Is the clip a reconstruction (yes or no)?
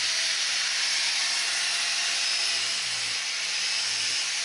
no